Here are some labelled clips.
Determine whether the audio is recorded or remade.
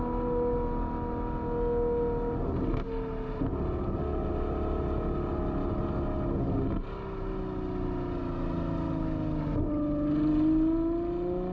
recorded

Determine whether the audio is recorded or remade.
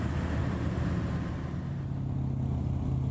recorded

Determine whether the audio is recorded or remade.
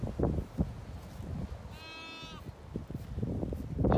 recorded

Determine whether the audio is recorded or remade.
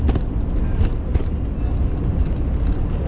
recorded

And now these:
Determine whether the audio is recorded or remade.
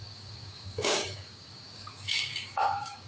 remade